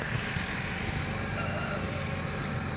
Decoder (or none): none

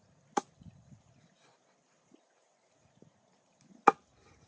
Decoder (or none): none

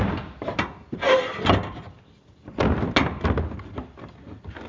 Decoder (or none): none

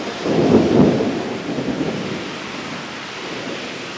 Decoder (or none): none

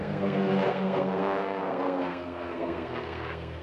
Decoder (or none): codec, SNAC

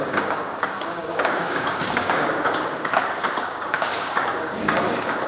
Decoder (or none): codec, DAC